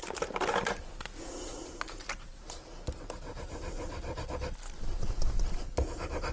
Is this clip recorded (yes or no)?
yes